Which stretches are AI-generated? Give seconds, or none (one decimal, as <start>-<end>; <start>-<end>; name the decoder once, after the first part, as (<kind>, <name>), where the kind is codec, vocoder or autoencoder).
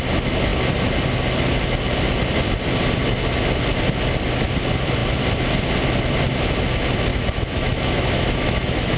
7.1-9.0 (autoencoder, DAC-VAE)